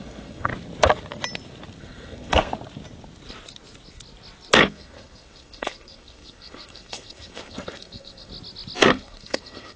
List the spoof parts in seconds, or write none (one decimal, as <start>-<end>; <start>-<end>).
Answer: 0.0-0.5; 1.8-2.5; 4.6-8.3; 8.9-9.8